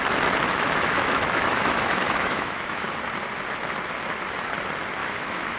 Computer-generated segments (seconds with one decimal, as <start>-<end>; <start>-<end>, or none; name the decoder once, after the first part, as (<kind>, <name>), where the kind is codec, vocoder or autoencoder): 0.5-2.9 (autoencoder, DAC-VAE); 5.0-5.6